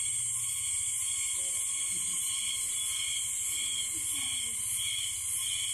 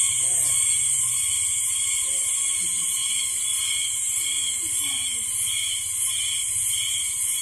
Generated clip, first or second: second